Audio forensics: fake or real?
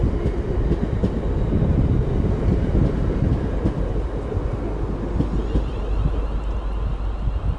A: real